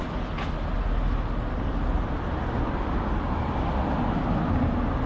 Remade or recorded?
recorded